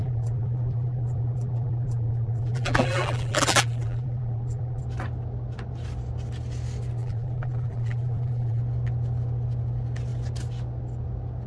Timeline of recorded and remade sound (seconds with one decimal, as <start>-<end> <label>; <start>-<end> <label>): 0.0-4.8 remade; 4.8-7.0 recorded; 7.0-8.6 remade; 8.6-11.5 recorded